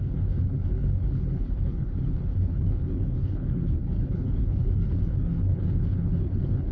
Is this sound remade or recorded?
remade